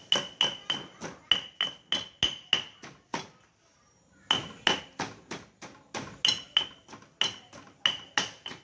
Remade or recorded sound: recorded